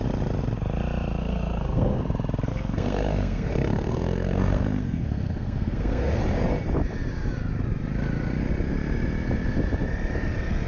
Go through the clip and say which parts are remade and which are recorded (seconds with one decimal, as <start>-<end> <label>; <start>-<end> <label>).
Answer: 0.0-1.2 recorded; 1.2-2.0 remade; 2.0-2.5 recorded; 2.5-6.2 remade; 6.2-10.7 recorded